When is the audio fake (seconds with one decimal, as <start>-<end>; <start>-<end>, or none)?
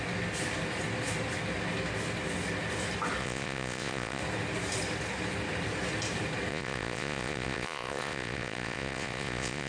3.2-4.2; 6.5-9.7